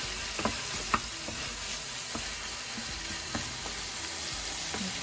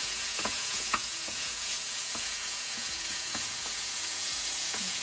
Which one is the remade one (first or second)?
second